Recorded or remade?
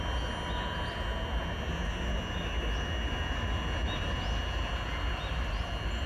recorded